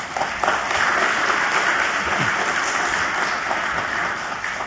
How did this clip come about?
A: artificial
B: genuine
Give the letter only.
B